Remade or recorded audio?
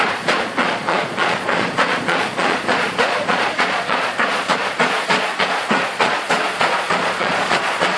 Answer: remade